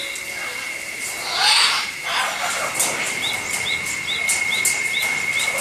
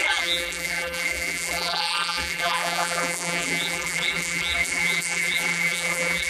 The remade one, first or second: second